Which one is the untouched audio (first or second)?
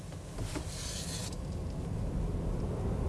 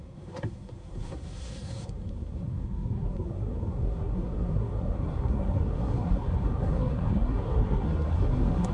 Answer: first